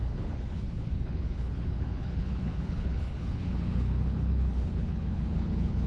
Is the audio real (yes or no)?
no